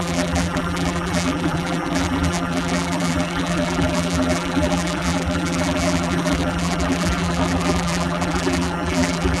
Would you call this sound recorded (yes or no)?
no